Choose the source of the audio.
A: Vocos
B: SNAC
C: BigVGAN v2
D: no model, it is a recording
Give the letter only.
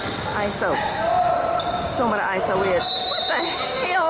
D